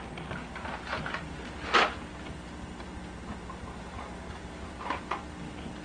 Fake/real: real